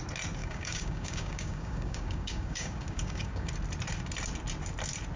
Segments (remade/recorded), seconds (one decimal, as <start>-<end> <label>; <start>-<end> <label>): 0.0-0.4 recorded; 0.4-3.5 remade; 3.5-5.2 recorded